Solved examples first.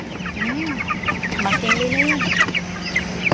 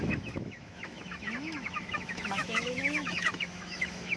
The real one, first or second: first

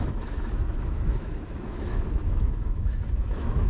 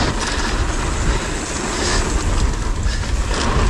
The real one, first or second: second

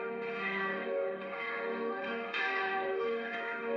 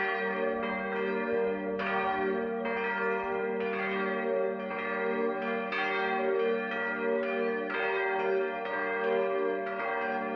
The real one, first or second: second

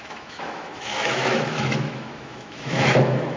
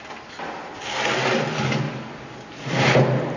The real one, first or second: second